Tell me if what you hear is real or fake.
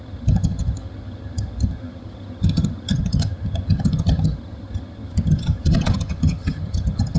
fake